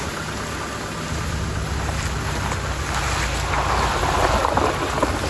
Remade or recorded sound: recorded